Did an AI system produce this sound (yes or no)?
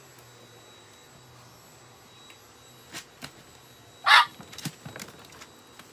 no